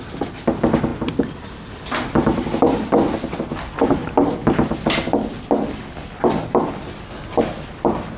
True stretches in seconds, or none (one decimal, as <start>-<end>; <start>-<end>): 0.0-8.2